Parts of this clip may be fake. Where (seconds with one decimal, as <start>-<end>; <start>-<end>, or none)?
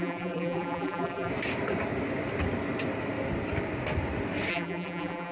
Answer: 0.0-1.3; 4.5-5.3